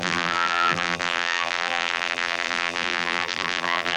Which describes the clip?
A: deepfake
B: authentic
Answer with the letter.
A